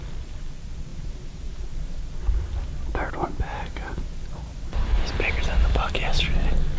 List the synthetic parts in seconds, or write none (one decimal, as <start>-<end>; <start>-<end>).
0.9-2.0; 3.5-6.3